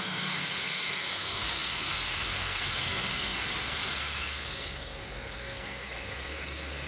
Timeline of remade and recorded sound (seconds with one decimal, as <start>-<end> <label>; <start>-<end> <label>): 0.0-6.9 remade